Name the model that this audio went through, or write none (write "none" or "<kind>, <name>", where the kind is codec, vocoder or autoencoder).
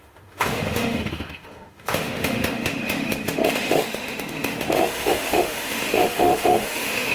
autoencoder, DAC-VAE